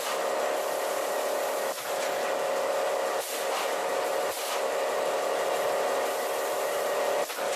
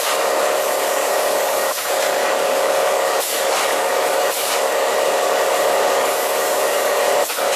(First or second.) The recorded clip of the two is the first